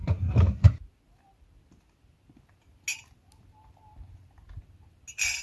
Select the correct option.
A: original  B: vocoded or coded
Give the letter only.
A